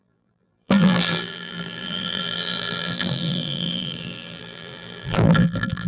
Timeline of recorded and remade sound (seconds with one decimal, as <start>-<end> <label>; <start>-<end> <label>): 0.0-5.9 remade